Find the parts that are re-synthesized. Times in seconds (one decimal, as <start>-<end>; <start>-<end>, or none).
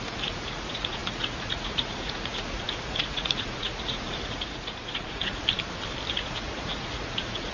0.0-5.4; 6.1-7.5